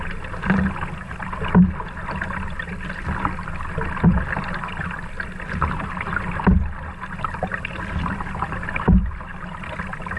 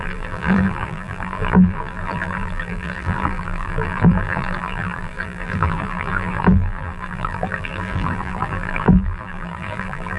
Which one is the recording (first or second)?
first